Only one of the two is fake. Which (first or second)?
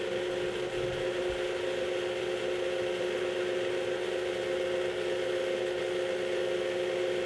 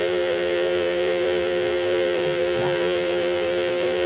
second